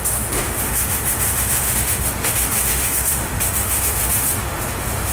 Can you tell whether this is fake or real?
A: fake